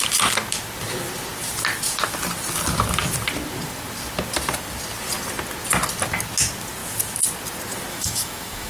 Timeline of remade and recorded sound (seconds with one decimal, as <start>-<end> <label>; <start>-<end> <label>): 0.0-7.9 recorded; 7.9-8.7 remade